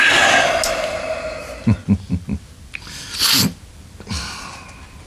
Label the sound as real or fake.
real